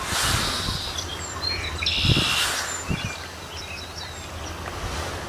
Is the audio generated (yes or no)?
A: no